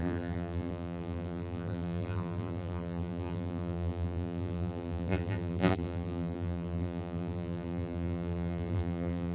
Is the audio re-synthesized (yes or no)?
yes